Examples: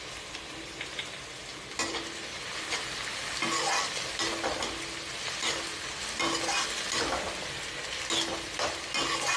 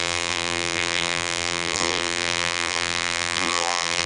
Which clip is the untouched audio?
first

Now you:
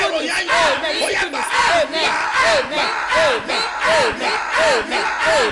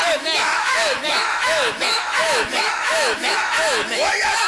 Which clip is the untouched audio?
first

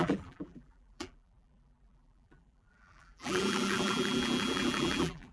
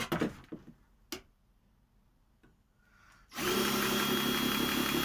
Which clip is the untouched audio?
second